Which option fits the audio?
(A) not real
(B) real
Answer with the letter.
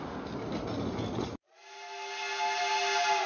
B